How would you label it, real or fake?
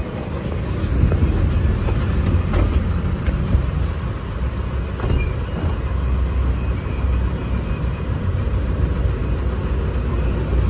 real